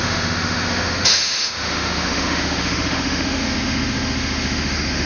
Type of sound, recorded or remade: remade